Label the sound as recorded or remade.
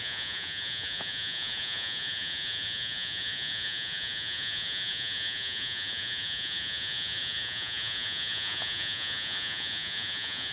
remade